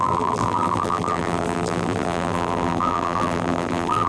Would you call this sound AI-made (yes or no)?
yes